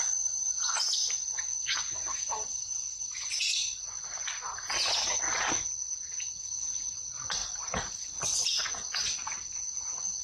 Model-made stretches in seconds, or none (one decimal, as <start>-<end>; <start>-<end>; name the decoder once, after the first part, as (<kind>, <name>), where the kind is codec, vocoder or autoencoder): none